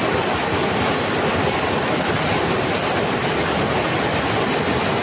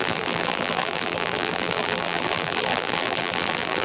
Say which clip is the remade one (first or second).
second